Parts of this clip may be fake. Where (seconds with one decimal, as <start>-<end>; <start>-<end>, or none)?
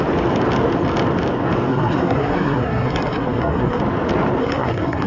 1.7-3.8; 4.4-5.1